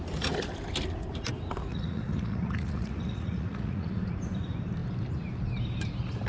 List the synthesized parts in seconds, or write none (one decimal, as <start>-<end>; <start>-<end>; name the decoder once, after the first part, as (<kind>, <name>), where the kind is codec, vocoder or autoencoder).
1.7-4.2 (vocoder, Vocos)